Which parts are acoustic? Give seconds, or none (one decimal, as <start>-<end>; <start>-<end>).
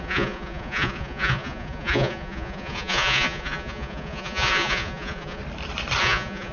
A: 5.4-6.0